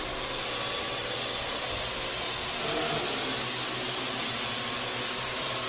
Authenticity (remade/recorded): recorded